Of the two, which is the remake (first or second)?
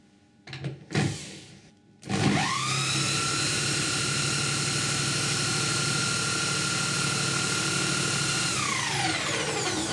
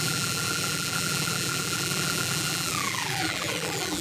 second